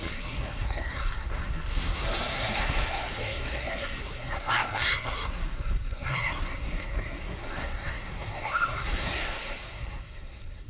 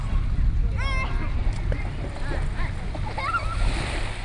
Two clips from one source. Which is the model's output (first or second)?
first